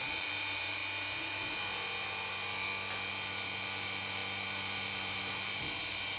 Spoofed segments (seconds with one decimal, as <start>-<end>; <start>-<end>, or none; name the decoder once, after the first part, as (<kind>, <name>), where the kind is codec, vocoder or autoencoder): 0.0-0.8 (vocoder, BigVGAN v2); 3.1-6.2